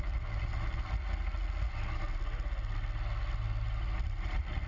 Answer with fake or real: real